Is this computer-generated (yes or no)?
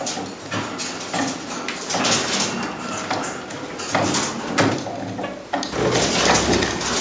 no